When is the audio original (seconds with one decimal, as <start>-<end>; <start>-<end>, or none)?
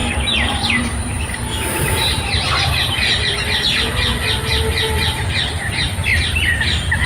2.7-4.5; 5.2-7.1